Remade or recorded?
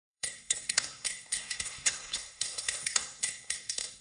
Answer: remade